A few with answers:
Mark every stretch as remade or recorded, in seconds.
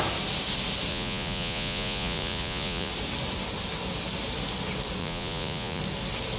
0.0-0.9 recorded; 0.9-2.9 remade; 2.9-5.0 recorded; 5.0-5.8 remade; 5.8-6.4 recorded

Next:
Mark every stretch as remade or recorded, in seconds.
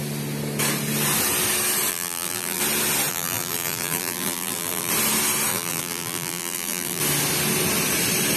0.0-1.9 recorded; 1.9-2.6 remade; 2.6-3.1 recorded; 3.1-4.9 remade; 4.9-5.5 recorded; 5.5-7.0 remade; 7.0-8.4 recorded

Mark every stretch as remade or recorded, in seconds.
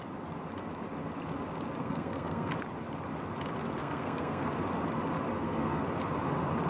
0.0-1.8 recorded; 1.8-2.5 remade; 2.5-3.8 recorded; 3.8-4.5 remade; 4.5-5.3 recorded; 5.3-5.8 remade; 5.8-6.7 recorded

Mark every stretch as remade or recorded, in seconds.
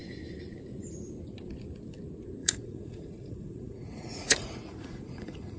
0.0-2.4 recorded; 2.4-5.6 remade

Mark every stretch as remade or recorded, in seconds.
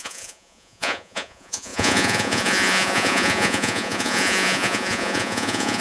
0.0-5.8 remade